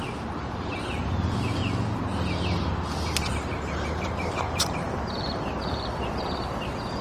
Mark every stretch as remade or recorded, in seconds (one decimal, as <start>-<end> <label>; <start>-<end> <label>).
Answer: 0.0-1.6 remade; 1.6-3.3 recorded; 3.3-7.0 remade